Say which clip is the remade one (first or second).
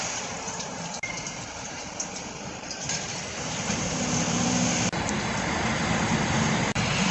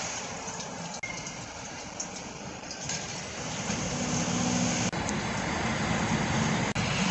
first